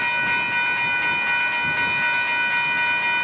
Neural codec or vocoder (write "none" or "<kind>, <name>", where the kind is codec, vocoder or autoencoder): none